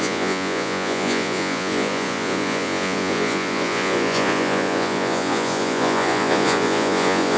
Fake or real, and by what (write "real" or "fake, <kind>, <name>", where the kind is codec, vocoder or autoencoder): fake, vocoder, Vocos